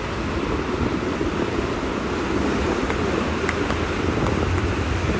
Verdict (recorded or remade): recorded